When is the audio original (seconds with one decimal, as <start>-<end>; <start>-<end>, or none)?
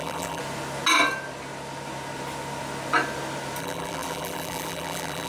0.4-3.6